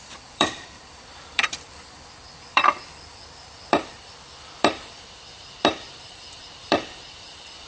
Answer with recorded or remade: remade